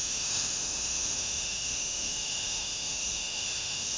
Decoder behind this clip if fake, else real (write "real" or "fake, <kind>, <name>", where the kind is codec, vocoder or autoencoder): fake, autoencoder, DAC-VAE